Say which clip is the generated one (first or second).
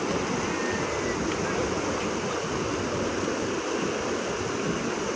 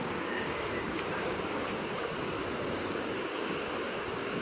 second